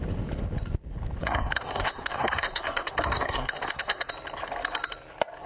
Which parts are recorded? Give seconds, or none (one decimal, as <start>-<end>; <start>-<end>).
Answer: 0.0-1.2; 4.1-5.5